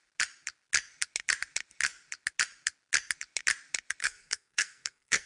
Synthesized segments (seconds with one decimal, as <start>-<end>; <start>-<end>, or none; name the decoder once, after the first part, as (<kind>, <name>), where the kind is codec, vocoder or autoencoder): 4.0-5.3 (codec, SNAC)

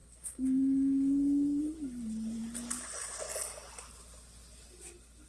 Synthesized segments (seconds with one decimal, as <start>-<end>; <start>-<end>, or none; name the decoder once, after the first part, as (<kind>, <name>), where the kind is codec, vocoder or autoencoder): 0.0-1.6 (codec, SNAC)

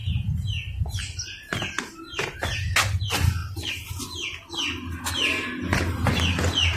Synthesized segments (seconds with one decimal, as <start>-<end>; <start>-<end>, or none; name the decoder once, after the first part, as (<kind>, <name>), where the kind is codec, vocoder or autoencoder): none

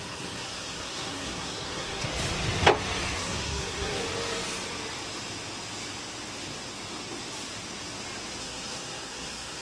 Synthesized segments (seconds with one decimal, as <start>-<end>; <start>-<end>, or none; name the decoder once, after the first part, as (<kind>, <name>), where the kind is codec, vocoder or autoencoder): 0.0-2.1 (codec, SNAC); 3.2-4.0; 8.4-9.6